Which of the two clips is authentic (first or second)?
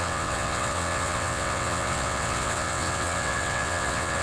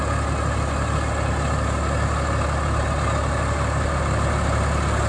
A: second